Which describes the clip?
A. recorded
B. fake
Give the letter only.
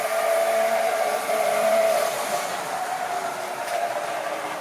B